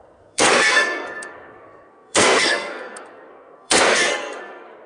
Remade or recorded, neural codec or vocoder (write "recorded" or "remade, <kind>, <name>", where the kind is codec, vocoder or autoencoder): remade, codec, SNAC